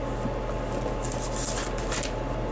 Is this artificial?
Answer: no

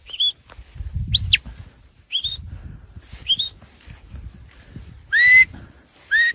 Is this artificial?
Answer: no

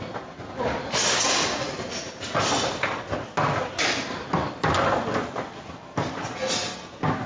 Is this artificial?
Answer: no